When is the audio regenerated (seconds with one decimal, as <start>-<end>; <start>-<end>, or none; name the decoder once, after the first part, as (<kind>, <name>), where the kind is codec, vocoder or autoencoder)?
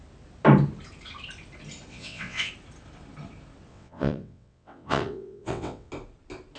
1.9-2.5 (vocoder, WaveNeXt); 3.7-5.9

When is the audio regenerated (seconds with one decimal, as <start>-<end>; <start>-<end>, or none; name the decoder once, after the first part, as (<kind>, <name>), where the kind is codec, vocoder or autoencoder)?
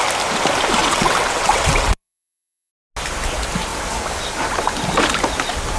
0.8-2.7 (vocoder, WaveNeXt)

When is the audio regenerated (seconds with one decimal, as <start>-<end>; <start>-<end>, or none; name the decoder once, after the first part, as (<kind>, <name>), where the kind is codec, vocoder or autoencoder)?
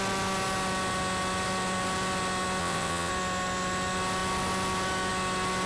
2.6-3.1 (vocoder, WaveNeXt)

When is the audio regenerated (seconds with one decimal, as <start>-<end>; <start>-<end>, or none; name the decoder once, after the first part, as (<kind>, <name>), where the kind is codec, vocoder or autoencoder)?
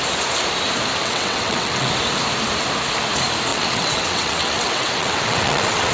1.0-1.9 (vocoder, WaveNeXt); 3.5-5.9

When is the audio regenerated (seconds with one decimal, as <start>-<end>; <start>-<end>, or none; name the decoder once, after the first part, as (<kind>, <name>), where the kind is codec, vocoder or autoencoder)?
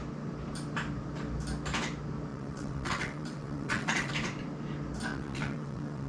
2.3-4.1 (vocoder, WaveNeXt); 5.1-6.1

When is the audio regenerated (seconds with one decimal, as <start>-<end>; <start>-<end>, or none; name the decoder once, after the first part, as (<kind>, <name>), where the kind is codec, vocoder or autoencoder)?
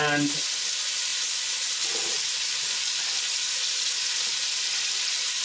none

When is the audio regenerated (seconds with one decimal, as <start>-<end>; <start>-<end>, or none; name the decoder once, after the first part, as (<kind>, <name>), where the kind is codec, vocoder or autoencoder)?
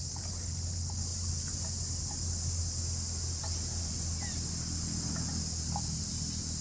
none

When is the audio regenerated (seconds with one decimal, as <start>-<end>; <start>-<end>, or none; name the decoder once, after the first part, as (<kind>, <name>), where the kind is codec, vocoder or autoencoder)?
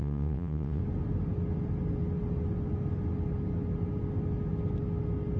0.0-0.8 (vocoder, WaveNeXt)